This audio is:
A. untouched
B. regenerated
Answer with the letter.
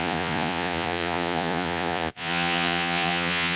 B